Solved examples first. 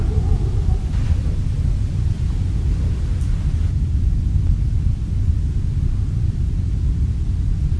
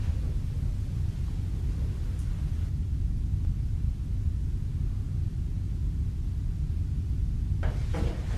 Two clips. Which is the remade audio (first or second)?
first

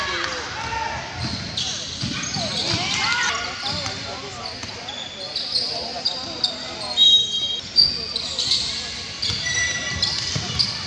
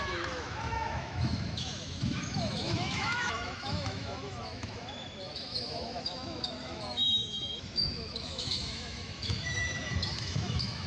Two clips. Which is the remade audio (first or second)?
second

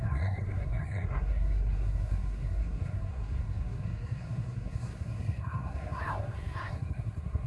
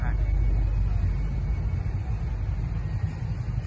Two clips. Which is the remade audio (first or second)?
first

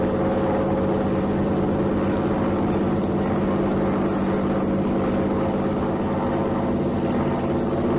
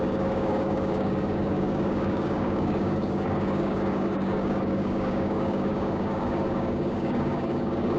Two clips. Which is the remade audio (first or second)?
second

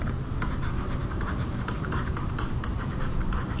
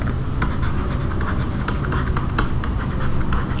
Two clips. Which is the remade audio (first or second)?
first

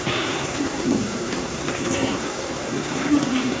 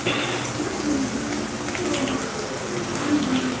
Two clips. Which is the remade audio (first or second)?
first